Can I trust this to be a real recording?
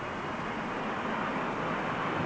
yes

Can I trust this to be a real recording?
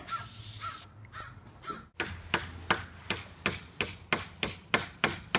yes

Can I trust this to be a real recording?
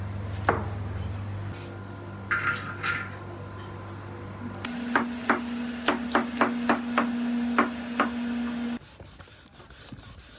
yes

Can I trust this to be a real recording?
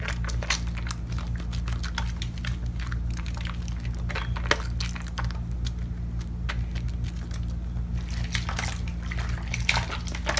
yes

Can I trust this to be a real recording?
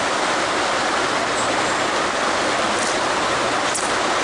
yes